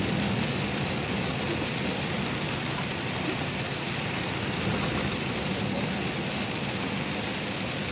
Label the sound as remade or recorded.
recorded